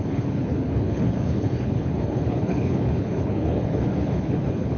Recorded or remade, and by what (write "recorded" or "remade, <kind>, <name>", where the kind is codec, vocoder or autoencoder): remade, codec, HILCodec